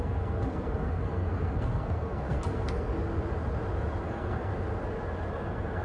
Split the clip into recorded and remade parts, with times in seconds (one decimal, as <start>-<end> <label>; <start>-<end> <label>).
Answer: 0.0-2.9 remade; 2.9-4.0 recorded; 4.0-4.5 remade; 4.5-5.3 recorded; 5.3-5.8 remade